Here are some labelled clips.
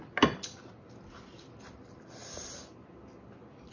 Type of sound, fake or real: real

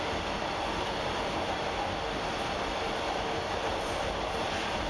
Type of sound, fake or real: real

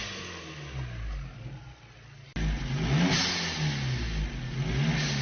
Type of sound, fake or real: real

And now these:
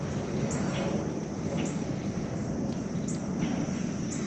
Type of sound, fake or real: real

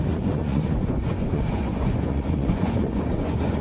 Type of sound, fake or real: fake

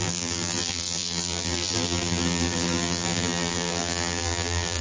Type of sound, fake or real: fake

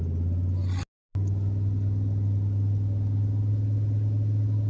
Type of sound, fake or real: real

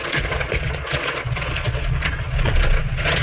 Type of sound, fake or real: fake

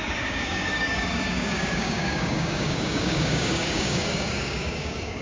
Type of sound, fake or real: fake